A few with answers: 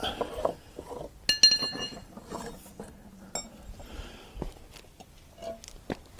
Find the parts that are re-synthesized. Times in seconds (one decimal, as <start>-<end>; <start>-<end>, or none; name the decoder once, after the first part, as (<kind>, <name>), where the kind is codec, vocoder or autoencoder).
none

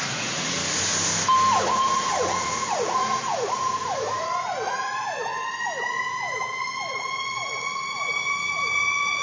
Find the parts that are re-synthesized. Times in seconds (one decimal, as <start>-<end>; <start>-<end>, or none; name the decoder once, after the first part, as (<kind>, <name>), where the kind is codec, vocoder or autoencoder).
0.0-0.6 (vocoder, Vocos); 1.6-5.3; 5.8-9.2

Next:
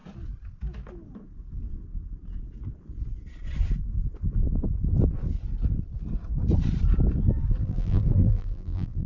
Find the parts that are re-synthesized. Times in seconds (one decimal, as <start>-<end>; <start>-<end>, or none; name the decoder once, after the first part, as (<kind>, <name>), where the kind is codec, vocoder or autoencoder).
7.6-9.1 (vocoder, BigVGAN v2)